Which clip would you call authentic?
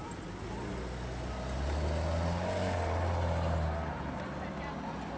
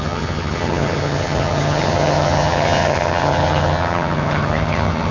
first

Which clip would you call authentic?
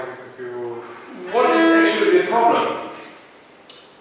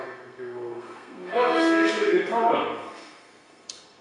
first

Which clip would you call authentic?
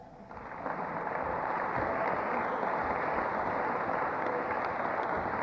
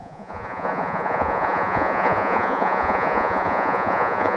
first